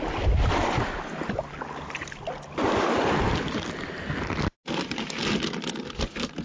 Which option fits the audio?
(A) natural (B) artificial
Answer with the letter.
A